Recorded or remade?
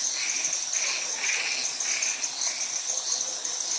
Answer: recorded